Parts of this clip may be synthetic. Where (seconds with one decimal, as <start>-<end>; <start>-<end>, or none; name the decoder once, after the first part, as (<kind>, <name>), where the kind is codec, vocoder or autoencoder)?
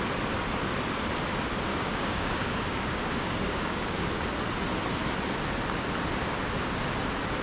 1.7-4.1 (codec, DAC)